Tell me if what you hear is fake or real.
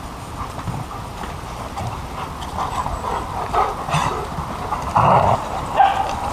real